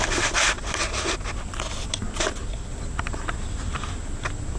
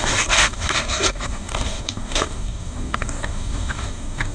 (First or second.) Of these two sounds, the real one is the first